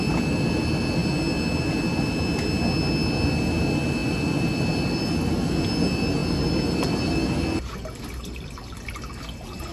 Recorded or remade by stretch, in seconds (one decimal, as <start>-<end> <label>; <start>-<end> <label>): 0.0-9.7 recorded